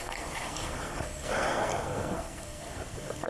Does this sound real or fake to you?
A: fake